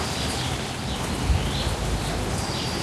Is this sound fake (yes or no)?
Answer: no